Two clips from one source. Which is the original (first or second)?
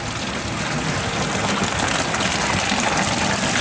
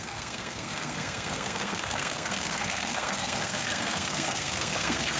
first